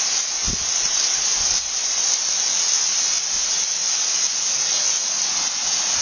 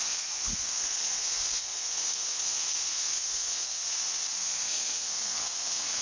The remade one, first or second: second